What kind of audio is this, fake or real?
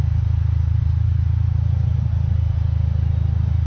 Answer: real